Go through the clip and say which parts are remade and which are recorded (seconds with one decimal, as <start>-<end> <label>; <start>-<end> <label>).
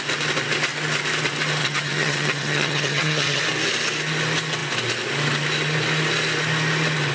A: 0.0-1.6 recorded; 1.6-3.4 remade; 3.4-7.1 recorded